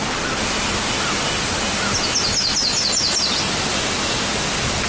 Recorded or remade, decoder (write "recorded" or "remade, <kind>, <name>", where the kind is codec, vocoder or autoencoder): recorded